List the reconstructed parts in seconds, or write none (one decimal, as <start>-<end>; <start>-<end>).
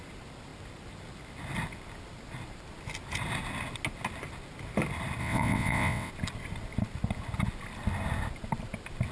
5.2-6.1